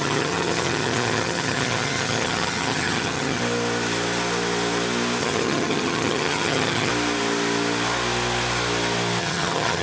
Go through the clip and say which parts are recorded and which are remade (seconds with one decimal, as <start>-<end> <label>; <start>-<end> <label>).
0.0-3.4 remade; 3.4-5.2 recorded; 5.2-6.9 remade; 6.9-9.2 recorded; 9.2-9.8 remade